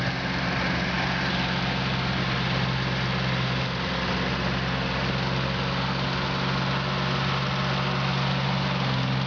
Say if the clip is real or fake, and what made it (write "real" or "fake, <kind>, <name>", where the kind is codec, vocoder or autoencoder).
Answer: real